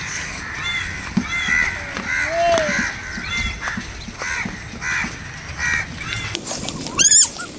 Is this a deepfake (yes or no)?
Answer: no